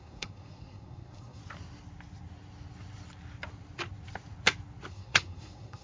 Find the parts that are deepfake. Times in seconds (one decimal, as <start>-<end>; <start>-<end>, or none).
0.0-1.4; 4.9-5.8

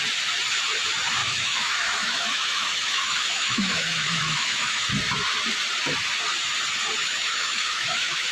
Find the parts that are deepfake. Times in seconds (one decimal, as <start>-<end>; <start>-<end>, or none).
1.2-4.9; 7.0-8.3